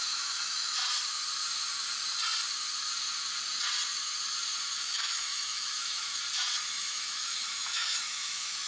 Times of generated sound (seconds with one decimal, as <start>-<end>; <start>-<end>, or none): 0.0-0.8; 4.8-6.2; 6.7-8.7